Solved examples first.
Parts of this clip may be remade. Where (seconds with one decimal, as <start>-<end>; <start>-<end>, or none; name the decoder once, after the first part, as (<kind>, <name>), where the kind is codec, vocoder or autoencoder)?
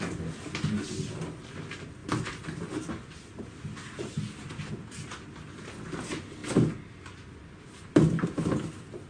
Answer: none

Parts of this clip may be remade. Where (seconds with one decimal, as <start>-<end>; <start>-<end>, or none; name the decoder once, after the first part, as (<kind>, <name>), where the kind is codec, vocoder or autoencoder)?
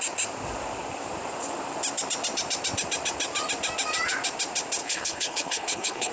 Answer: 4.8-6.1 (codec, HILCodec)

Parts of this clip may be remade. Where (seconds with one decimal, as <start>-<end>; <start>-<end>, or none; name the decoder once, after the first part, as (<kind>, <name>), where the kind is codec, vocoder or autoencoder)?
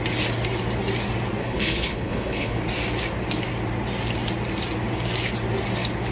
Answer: 1.4-2.6 (codec, HILCodec)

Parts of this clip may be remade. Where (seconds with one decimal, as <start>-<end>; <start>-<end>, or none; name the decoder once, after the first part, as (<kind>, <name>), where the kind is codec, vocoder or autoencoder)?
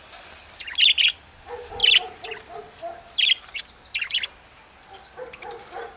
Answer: none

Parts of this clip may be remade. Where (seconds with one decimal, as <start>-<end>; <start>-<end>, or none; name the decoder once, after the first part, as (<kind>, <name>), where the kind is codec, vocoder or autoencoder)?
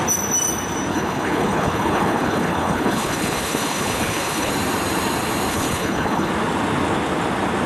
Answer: 0.9-4.5 (codec, HILCodec); 5.5-6.3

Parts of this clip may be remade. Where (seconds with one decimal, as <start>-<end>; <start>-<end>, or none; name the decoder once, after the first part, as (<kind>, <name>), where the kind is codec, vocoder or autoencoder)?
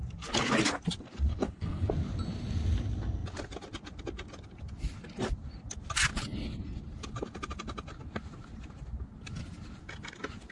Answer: 1.3-1.9 (codec, HILCodec)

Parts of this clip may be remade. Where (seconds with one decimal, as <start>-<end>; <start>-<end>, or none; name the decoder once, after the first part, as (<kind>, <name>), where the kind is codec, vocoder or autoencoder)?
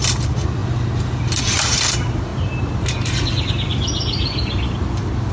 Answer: none